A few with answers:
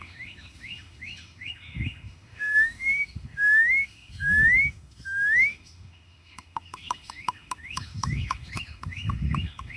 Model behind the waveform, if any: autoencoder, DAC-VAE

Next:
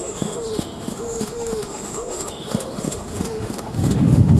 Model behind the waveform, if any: autoencoder, DAC-VAE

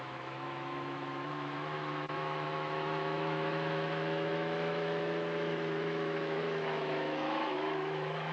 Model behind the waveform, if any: autoencoder, DAC-VAE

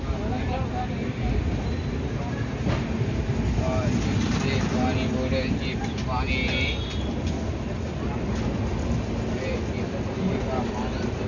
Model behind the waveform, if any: none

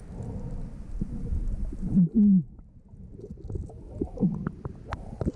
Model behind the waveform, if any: none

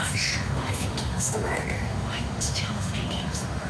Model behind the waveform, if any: autoencoder, DAC-VAE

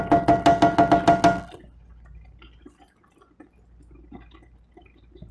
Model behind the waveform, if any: none